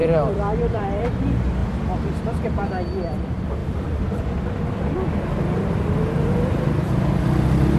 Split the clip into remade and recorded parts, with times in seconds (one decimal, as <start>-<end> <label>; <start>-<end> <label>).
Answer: 0.0-1.0 remade; 1.0-3.6 recorded; 3.6-7.0 remade; 7.0-7.8 recorded